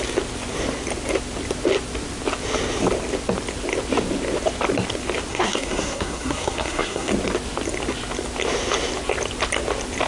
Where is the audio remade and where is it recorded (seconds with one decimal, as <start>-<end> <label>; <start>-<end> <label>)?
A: 0.0-5.3 recorded; 5.3-7.1 remade; 7.1-10.1 recorded